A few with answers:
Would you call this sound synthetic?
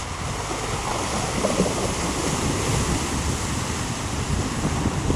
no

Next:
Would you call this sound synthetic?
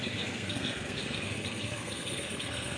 yes